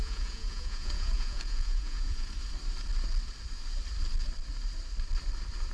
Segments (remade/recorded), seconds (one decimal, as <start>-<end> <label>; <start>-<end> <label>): 0.0-2.3 remade; 2.3-5.7 recorded